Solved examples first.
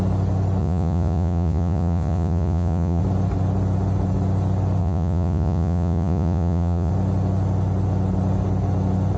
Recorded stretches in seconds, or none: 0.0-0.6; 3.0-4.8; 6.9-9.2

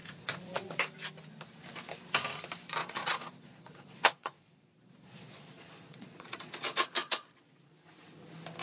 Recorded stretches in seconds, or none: 0.8-2.8; 6.4-7.0; 7.7-8.6

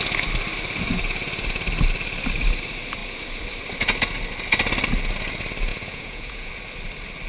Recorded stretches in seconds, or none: 0.0-5.7; 6.5-7.3

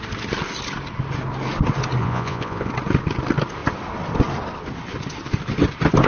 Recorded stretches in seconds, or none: 0.0-2.0; 2.7-6.1

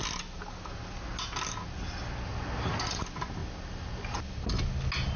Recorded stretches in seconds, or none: 0.0-5.2